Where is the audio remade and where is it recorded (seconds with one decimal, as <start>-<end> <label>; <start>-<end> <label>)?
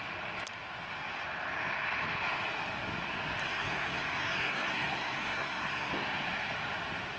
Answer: 0.0-3.4 recorded; 3.4-5.9 remade; 5.9-7.2 recorded